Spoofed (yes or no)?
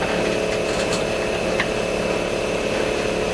no